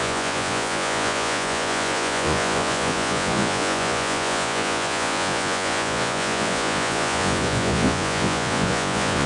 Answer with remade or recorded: remade